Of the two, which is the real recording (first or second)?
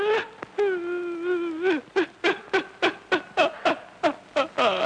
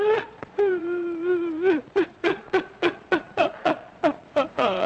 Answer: first